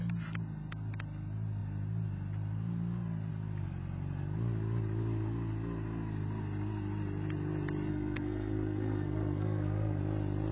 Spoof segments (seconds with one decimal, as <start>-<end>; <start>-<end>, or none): 7.9-10.0